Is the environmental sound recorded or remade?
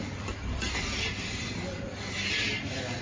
recorded